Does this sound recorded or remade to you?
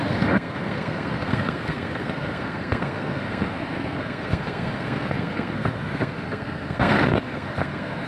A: remade